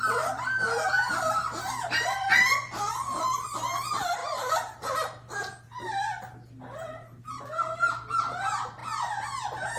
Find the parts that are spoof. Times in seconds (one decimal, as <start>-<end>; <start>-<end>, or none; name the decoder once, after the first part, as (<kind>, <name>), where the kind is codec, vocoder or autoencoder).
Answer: 0.0-9.8 (vocoder, BigVGAN v2)